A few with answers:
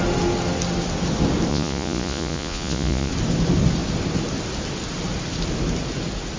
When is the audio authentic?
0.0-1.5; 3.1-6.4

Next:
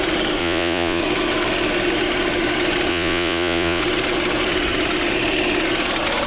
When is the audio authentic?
0.0-0.4; 1.0-2.9; 3.8-6.3

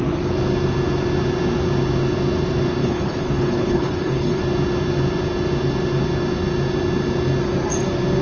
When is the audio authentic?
0.0-2.8; 4.4-8.2

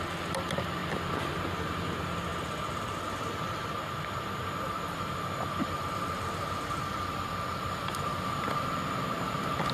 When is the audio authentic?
0.0-3.6; 6.3-9.7

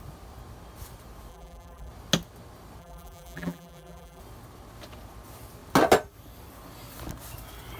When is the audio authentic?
0.0-1.3; 1.9-2.8; 4.2-7.8

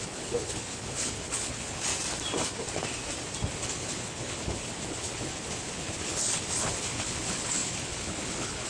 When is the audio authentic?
1.9-3.5

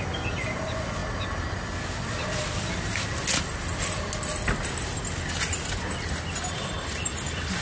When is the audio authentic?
0.0-7.6